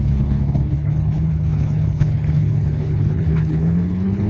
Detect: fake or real fake